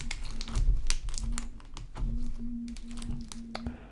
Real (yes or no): yes